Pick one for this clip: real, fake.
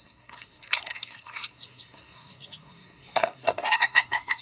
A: fake